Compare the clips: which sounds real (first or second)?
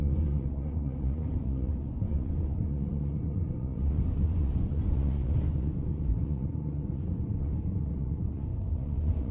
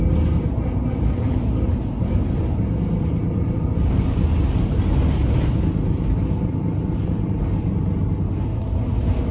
second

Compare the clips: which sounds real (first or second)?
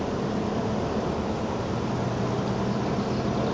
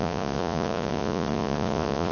first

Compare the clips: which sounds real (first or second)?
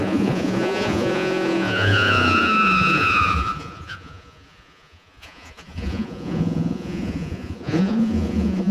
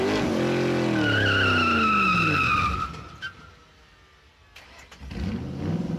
second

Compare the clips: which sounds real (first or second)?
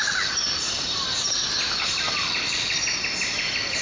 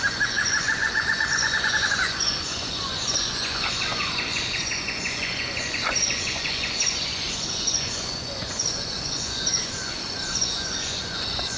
first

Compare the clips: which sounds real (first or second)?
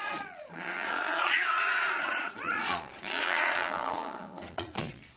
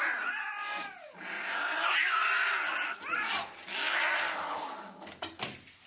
second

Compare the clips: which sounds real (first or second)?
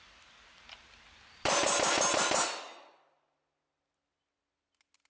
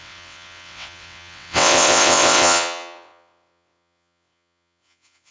first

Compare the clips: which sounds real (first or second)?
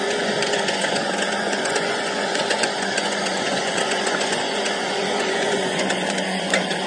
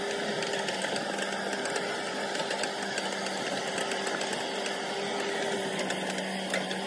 second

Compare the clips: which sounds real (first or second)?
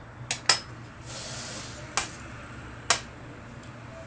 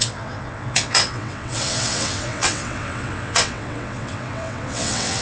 first